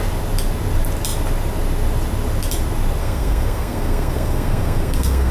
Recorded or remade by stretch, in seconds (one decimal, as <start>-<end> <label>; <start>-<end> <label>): 0.0-3.0 recorded; 3.0-5.3 remade

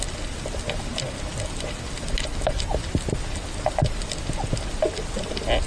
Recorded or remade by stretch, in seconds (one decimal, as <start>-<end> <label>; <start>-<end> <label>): 0.0-5.7 recorded

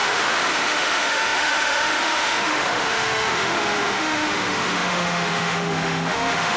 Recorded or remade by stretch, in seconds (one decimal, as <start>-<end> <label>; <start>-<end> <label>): 0.0-6.6 remade

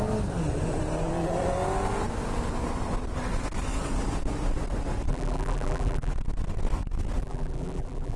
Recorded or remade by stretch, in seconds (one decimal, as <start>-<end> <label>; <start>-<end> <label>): 0.0-5.1 recorded; 5.1-6.1 remade; 6.1-7.2 recorded; 7.2-8.2 remade

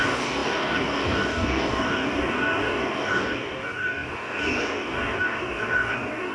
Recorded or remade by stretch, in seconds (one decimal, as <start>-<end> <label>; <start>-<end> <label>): 0.0-6.3 remade

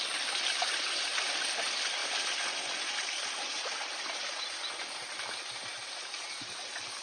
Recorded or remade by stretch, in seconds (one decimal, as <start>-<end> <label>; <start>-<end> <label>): 0.0-7.0 recorded